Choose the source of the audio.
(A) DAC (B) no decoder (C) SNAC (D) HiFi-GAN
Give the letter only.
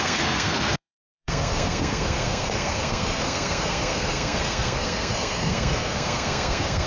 C